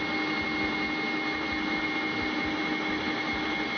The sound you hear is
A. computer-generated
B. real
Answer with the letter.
B